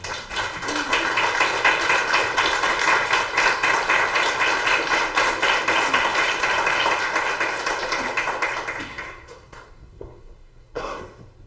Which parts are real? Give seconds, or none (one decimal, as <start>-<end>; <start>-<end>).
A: 0.0-8.9; 11.0-11.5